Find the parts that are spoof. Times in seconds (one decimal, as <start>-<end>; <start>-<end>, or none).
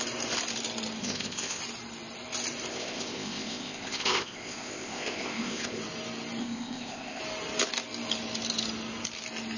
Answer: 1.0-1.6; 2.7-5.8; 6.4-7.2